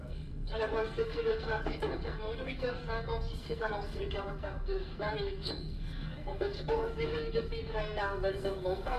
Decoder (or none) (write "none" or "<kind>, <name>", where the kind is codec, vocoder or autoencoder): codec, SNAC